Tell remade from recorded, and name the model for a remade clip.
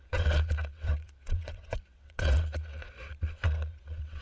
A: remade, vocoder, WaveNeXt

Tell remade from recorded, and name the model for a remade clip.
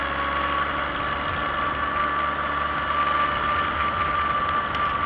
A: recorded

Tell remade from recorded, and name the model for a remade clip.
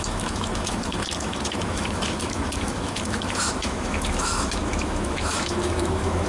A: remade, autoencoder, DAC-VAE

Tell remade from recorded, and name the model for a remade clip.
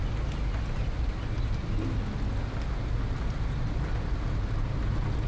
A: recorded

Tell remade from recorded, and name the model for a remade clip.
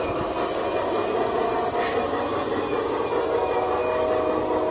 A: recorded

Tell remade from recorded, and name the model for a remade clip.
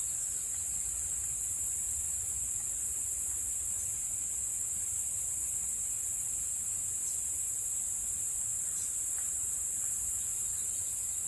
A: recorded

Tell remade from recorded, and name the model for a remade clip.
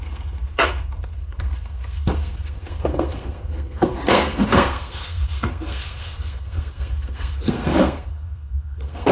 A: remade, codec, SNAC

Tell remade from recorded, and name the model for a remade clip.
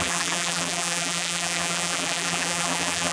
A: remade, vocoder, BigVGAN v2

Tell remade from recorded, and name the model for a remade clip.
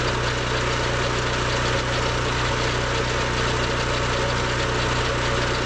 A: recorded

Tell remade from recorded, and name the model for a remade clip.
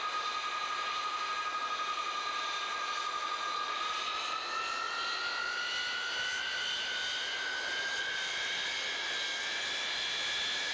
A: recorded